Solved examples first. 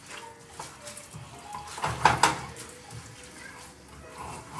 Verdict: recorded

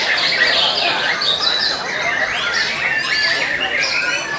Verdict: recorded